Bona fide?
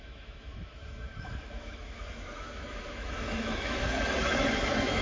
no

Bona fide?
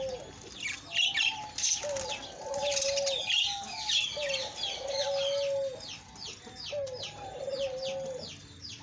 yes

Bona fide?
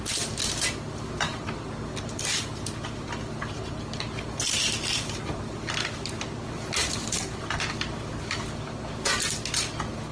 yes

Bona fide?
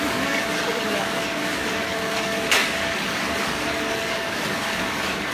no